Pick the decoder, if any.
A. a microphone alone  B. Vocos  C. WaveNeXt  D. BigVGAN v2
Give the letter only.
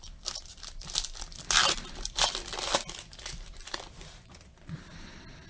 D